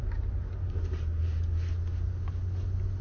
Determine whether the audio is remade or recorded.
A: recorded